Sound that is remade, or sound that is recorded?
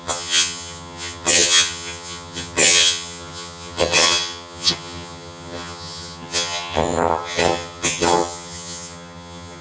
remade